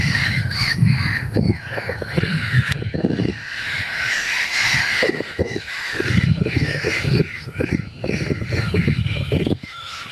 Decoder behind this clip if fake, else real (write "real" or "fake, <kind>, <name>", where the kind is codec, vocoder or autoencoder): fake, autoencoder, DAC-VAE